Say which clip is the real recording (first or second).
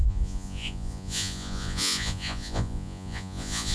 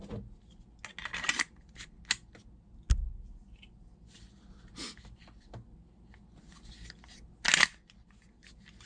second